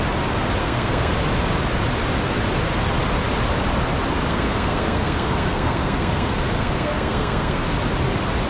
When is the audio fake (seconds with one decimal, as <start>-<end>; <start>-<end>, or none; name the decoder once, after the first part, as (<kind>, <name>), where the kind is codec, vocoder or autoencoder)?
0.6-1.1 (codec, SNAC); 4.3-7.6